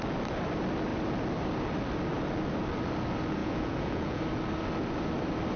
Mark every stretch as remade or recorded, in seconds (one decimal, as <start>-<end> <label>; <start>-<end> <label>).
0.0-3.4 recorded; 3.4-4.2 remade; 4.2-5.6 recorded

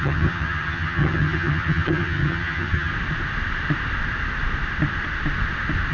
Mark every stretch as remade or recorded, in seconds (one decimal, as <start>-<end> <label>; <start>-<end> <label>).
0.0-2.9 remade; 2.9-5.9 recorded

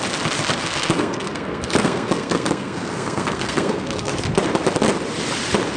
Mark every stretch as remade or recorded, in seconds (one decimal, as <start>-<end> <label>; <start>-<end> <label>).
0.0-0.6 recorded; 0.6-4.1 remade; 4.1-5.8 recorded